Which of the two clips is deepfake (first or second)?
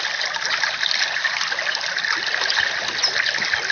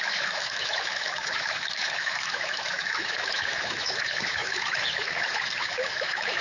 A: second